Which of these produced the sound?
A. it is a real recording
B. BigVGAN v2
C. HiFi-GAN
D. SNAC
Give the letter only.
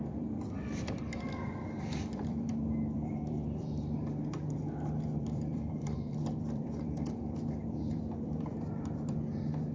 B